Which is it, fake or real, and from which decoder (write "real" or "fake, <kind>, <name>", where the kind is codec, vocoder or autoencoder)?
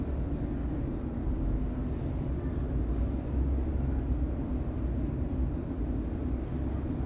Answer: real